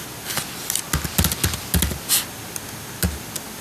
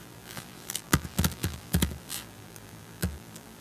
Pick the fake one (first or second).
second